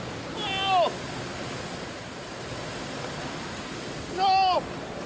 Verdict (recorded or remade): recorded